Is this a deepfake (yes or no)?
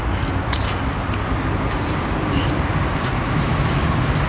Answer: no